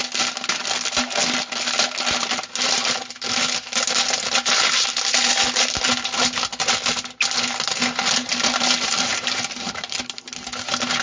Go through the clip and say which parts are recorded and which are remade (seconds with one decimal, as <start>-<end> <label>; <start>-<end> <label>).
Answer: 0.0-11.0 recorded